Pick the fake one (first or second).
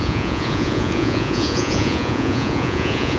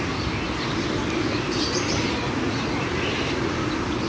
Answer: first